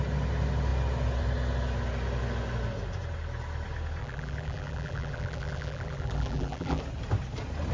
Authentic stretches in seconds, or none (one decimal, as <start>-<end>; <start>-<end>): 0.0-4.0; 6.8-7.7